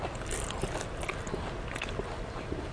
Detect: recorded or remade recorded